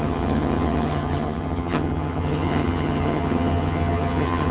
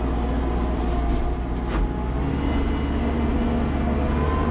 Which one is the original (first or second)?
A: second